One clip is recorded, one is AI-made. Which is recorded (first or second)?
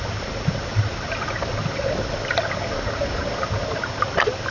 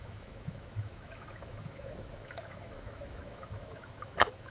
first